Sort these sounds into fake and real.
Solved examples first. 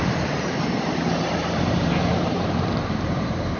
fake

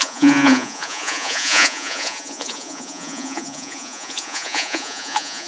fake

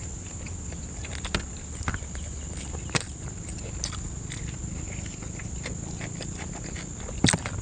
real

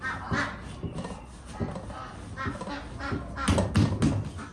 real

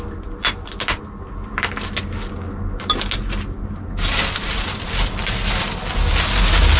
real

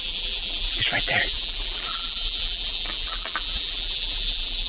fake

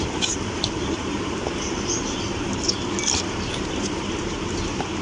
fake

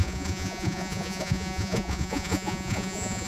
fake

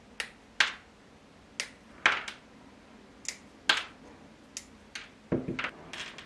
real